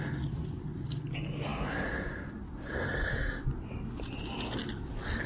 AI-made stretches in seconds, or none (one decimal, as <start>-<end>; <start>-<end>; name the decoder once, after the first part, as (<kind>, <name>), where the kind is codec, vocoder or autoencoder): none